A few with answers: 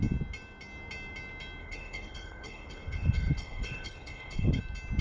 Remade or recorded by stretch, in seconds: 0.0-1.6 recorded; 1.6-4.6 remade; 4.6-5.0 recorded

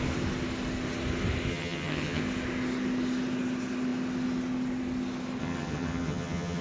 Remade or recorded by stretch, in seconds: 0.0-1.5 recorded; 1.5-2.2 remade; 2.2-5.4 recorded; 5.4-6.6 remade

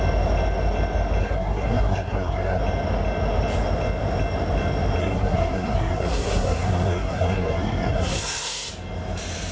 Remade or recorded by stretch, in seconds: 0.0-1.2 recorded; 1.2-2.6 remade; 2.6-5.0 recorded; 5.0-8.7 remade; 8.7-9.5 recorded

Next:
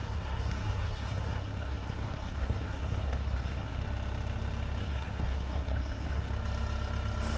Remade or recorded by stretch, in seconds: 0.0-3.8 remade; 3.8-4.8 recorded; 4.8-6.3 remade; 6.3-7.4 recorded

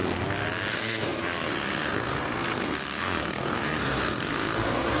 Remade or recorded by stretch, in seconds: 0.0-0.7 recorded; 0.7-5.0 remade

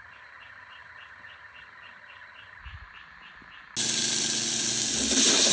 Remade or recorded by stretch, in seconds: 0.0-2.6 remade; 2.6-5.5 recorded